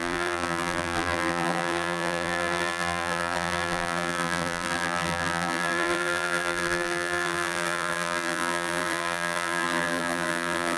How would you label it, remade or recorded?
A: remade